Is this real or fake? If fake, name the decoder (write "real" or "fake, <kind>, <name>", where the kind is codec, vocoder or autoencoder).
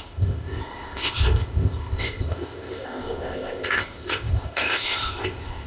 fake, codec, ZipCodec